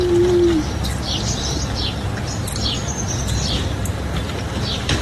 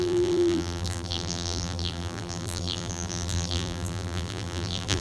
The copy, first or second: second